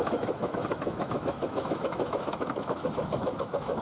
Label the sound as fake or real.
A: fake